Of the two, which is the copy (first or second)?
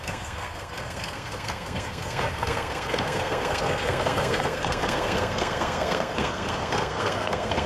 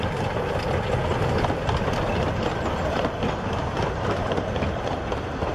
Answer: first